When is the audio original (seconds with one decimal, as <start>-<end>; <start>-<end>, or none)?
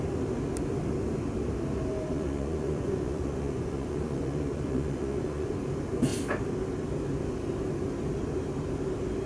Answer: 0.0-2.1; 5.5-9.3